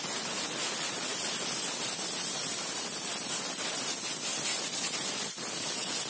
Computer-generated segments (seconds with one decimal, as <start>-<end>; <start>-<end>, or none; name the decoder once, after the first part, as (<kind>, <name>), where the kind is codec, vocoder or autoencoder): none